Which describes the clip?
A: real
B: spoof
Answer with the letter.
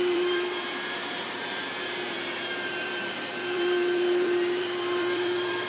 B